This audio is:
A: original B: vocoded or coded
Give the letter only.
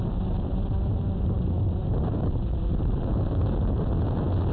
B